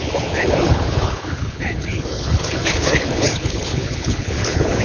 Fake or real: fake